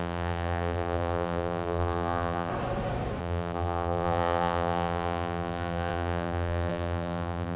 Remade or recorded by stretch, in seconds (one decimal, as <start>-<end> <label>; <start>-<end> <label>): 0.0-2.5 remade; 2.5-3.2 recorded; 3.2-7.6 remade